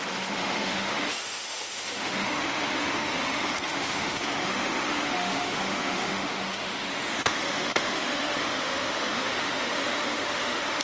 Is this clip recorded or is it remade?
remade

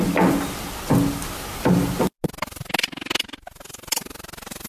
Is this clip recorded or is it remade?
recorded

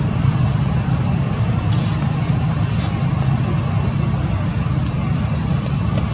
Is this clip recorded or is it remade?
recorded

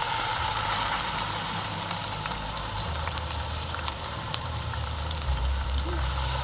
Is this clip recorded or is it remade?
remade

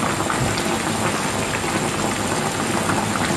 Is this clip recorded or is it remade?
recorded